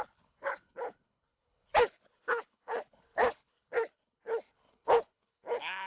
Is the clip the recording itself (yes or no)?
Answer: no